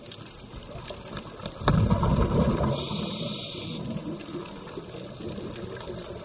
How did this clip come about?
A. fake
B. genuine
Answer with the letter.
B